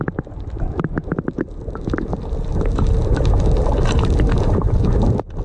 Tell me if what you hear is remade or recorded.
remade